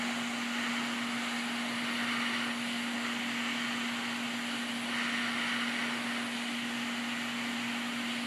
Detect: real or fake real